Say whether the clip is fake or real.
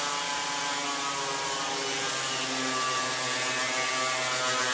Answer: real